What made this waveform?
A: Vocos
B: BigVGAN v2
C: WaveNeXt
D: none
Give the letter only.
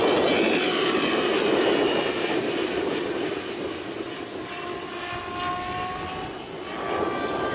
D